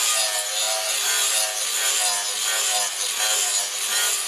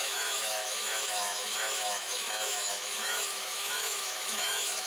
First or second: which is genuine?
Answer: first